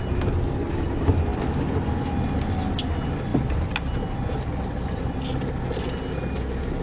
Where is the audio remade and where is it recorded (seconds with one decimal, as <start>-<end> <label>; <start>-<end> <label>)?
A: 0.0-6.8 recorded